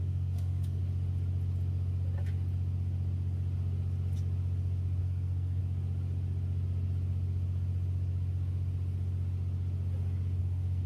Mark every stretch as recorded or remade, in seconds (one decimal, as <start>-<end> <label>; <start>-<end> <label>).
0.0-0.8 remade; 0.8-5.0 recorded; 5.0-5.6 remade; 5.6-10.4 recorded; 10.4-10.9 remade